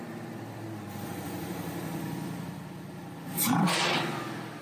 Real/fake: fake